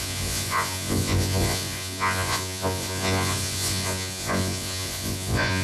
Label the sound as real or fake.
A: fake